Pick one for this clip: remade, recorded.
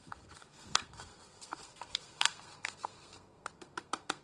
remade